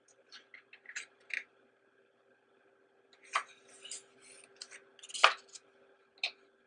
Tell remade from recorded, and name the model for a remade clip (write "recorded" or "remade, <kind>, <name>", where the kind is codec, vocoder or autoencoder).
recorded